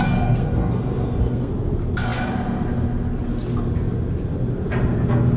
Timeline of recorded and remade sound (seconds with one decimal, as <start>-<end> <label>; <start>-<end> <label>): 0.0-1.5 remade; 1.5-5.4 recorded